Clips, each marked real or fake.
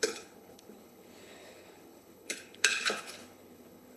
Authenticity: fake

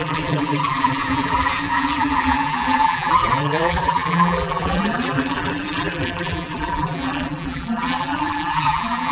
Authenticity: fake